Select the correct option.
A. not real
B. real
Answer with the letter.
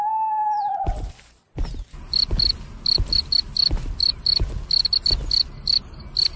B